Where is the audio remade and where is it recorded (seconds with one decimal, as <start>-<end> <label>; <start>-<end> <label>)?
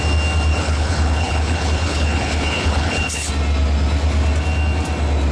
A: 0.0-0.5 recorded; 0.5-3.3 remade; 3.3-5.3 recorded